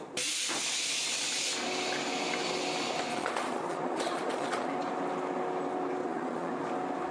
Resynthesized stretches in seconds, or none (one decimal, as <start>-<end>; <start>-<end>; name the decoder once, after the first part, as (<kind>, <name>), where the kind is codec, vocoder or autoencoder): 3.1-4.7 (vocoder, Vocos); 6.0-6.5